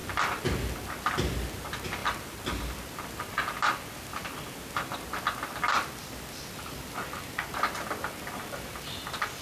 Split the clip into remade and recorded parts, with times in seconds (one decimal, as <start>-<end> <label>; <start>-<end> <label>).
0.0-1.6 recorded; 1.6-9.4 remade